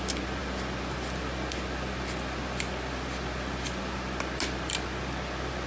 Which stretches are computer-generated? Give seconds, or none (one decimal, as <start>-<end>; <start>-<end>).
none